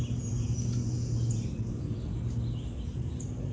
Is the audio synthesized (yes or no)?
no